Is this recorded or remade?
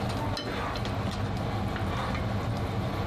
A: recorded